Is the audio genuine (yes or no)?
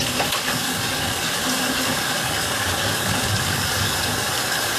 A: no